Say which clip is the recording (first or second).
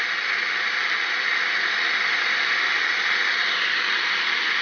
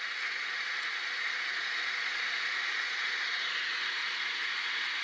first